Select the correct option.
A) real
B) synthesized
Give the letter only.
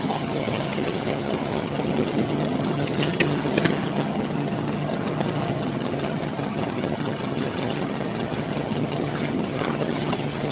B